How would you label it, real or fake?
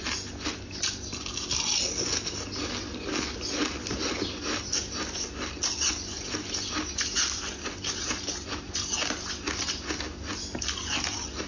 real